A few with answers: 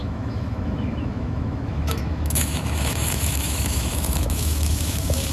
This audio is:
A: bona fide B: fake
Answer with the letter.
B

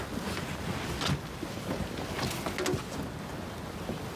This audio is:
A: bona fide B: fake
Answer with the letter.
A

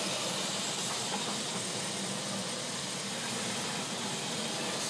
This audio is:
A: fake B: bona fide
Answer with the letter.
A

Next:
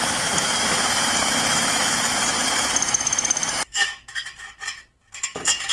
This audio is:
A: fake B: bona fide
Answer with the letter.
A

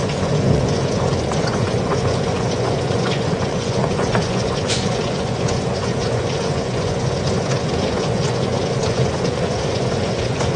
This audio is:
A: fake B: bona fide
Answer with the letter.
A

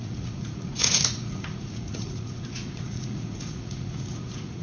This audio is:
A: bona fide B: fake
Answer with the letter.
B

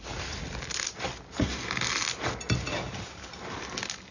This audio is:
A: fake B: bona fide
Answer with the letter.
B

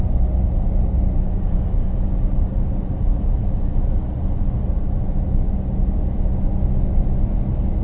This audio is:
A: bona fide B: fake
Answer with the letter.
A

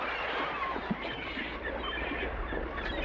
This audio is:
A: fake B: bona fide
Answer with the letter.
A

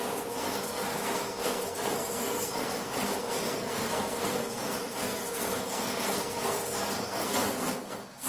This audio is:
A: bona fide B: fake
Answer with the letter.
B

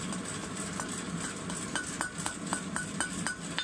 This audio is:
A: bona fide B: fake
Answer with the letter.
A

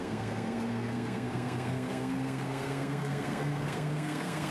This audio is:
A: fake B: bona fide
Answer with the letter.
A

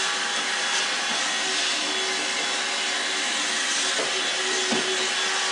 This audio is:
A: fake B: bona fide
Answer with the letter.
B